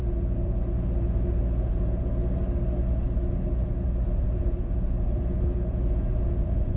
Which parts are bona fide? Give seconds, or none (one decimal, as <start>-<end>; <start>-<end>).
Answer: 2.2-4.2